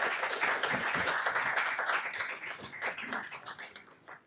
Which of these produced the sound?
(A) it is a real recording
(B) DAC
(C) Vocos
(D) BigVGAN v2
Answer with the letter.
C